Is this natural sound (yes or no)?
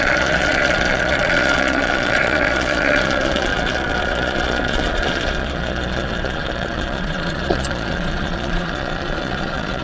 no